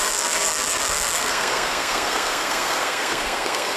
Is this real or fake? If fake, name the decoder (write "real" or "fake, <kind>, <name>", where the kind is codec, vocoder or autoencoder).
fake, codec, SNAC